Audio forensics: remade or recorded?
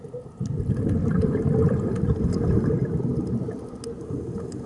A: recorded